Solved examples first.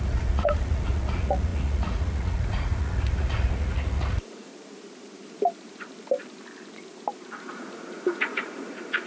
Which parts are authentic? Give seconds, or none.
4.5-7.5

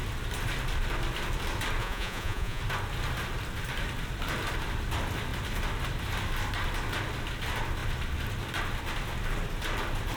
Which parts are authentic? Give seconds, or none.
0.0-1.8; 2.6-10.2